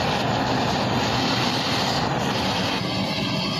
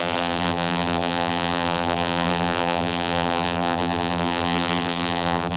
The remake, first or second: second